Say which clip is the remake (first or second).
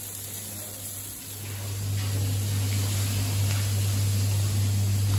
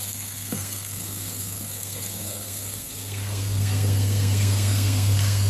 second